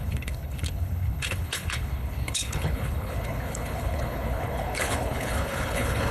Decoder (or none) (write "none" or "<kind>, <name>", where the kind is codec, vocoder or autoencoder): codec, HILCodec